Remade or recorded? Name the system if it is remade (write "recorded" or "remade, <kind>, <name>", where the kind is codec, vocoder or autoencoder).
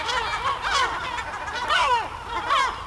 recorded